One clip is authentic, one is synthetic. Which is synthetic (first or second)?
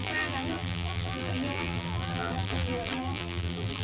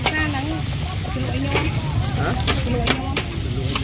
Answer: first